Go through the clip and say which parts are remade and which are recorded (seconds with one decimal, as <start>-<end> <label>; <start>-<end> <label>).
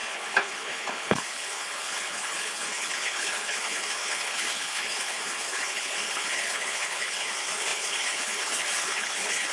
0.0-9.5 remade